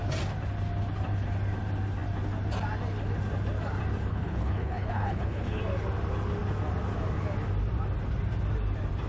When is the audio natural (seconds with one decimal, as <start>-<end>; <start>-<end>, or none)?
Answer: 0.0-4.1; 5.6-9.1